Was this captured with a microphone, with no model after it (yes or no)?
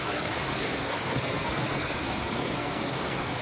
no